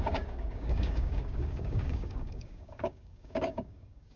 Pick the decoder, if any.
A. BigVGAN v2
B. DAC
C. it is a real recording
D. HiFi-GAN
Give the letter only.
B